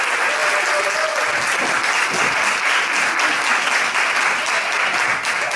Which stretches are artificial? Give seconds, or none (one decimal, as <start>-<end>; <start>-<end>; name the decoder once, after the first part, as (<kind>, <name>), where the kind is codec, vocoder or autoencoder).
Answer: none